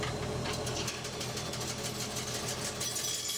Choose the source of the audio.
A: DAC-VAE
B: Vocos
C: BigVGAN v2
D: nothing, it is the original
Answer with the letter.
D